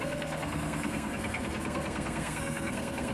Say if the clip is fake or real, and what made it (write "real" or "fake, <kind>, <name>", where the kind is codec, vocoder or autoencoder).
fake, codec, SNAC